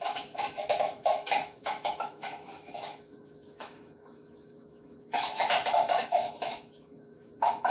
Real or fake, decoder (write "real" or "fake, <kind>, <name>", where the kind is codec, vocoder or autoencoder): fake, autoencoder, DAC-VAE